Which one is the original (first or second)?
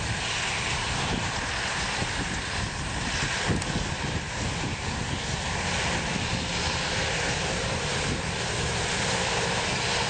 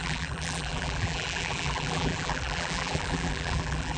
first